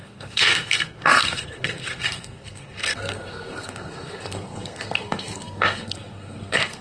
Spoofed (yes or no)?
yes